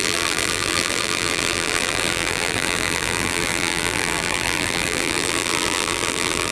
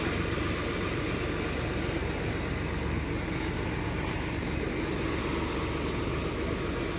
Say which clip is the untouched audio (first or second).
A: second